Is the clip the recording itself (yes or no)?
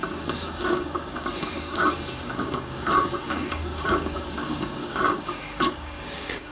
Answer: no